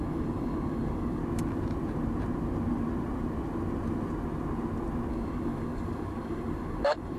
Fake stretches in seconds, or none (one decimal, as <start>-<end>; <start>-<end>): 0.0-1.2; 5.1-7.2

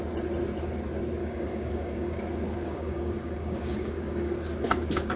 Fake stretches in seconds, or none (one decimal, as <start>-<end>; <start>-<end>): 1.2-2.2; 2.6-4.3

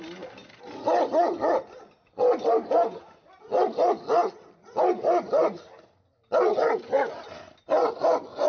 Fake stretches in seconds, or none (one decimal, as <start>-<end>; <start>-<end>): none

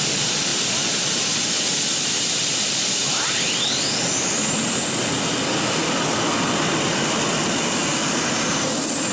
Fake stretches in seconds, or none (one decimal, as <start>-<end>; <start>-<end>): none

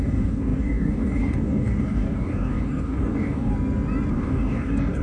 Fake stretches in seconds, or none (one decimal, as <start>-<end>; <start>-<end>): 0.0-3.5; 4.1-5.0

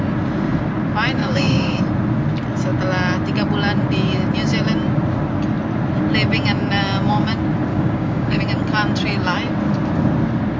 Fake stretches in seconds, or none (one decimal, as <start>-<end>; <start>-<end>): 1.2-1.8; 7.7-8.4

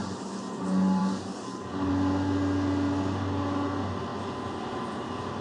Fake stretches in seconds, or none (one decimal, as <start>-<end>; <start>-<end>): 1.0-1.9

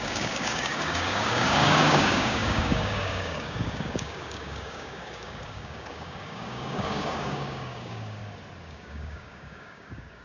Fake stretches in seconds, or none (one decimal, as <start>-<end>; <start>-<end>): 0.0-8.2; 8.7-10.2